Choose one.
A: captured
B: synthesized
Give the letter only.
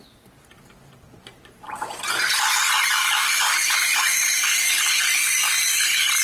B